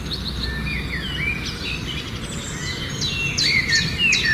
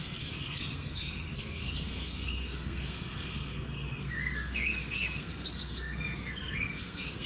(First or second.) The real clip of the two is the first